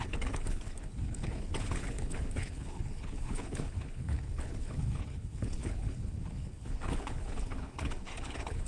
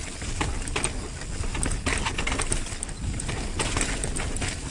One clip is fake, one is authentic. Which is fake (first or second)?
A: first